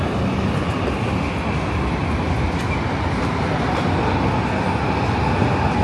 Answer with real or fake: real